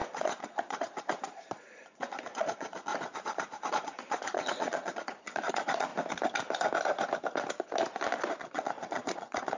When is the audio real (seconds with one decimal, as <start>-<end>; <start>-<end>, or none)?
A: 2.9-3.7; 5.9-8.3